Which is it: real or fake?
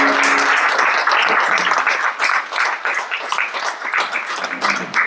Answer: real